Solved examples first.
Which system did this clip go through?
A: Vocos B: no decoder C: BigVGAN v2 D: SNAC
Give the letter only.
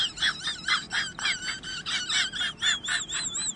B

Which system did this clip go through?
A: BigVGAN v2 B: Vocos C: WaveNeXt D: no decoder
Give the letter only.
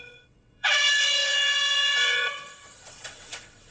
C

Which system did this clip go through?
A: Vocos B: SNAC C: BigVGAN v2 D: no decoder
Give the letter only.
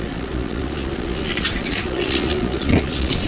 A